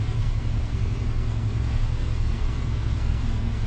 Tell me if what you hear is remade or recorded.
remade